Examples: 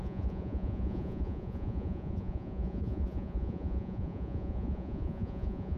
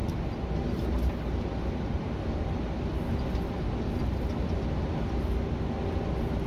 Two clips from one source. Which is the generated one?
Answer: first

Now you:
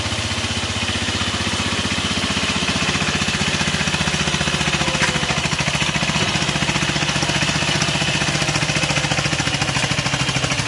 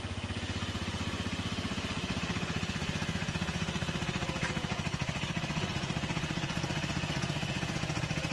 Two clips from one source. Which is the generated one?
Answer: second